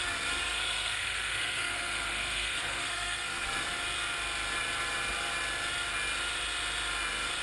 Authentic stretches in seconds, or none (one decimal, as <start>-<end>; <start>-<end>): 0.0-0.4; 3.5-7.4